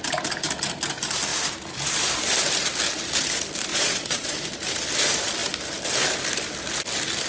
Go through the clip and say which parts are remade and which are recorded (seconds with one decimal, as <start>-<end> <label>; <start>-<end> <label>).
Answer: 0.0-3.7 recorded; 3.7-4.3 remade; 4.3-7.3 recorded